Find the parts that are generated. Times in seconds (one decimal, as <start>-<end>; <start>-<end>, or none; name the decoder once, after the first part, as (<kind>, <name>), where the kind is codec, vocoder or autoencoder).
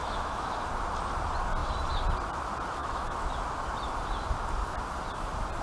0.0-0.7 (autoencoder, DAC-VAE); 2.8-3.3